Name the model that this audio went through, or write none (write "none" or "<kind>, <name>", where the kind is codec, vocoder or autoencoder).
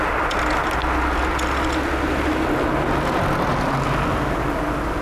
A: none